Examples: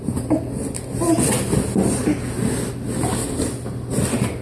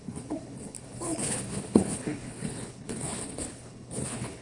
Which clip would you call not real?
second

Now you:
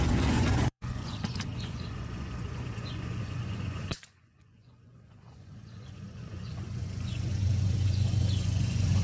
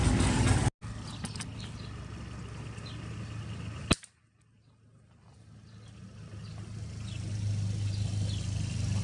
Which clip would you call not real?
first